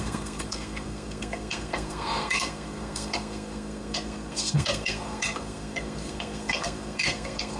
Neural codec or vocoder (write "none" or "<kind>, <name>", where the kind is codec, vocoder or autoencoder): codec, SNAC